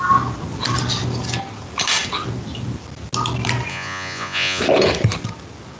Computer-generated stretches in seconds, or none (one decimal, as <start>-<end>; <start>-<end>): 3.7-4.6